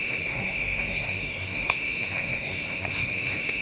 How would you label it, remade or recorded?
remade